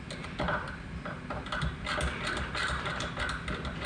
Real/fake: real